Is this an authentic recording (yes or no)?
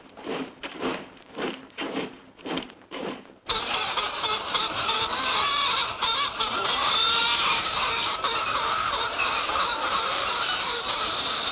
no